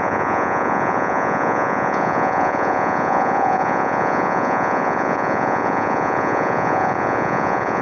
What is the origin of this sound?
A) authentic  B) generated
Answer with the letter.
B